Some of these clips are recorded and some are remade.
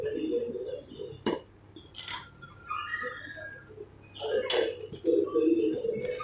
recorded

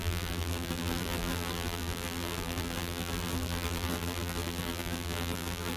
remade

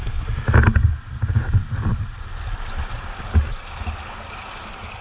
recorded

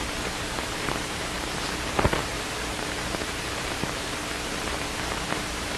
remade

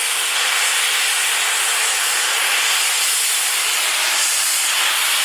recorded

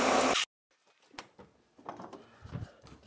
recorded